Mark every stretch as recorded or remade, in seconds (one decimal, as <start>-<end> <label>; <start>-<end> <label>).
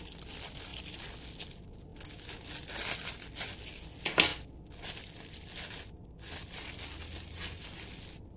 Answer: 0.0-8.4 recorded